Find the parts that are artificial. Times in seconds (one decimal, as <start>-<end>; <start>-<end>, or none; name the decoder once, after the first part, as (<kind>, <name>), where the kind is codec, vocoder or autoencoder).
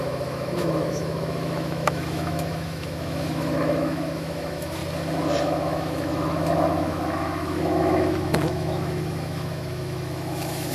0.0-4.8 (autoencoder, DAC-VAE); 5.4-10.7